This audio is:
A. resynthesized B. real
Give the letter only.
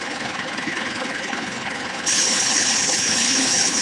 A